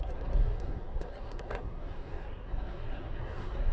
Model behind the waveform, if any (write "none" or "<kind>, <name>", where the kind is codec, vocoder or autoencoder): codec, SNAC